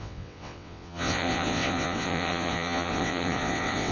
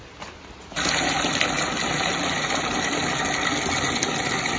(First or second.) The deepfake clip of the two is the first